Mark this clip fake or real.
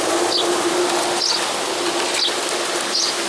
real